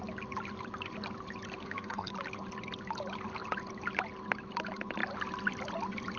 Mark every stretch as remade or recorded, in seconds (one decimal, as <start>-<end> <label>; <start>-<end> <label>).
0.0-1.6 recorded; 1.6-2.1 remade; 2.1-6.2 recorded

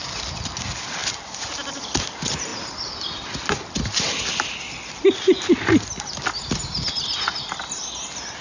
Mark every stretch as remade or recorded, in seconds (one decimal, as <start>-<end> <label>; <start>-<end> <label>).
0.0-8.4 recorded

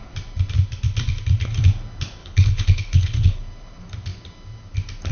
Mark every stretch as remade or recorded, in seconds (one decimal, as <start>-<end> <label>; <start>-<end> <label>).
0.0-2.2 recorded; 2.2-3.4 remade; 3.4-5.1 recorded